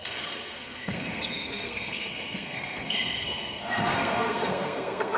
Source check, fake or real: fake